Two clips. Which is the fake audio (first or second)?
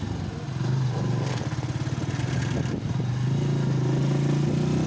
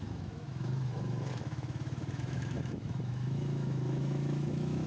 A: second